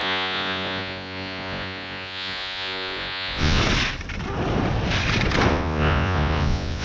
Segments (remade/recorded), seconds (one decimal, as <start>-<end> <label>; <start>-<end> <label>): 0.0-3.6 remade; 3.6-5.5 recorded; 5.5-6.8 remade

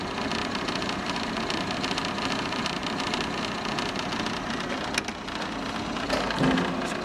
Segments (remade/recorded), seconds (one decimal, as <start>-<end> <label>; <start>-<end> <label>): 0.0-0.4 recorded; 0.4-3.4 remade; 3.4-7.0 recorded

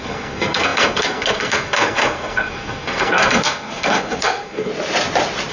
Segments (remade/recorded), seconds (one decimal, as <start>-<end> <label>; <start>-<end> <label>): 0.0-4.7 remade; 4.7-5.5 recorded